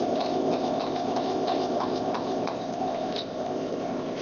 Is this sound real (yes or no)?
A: no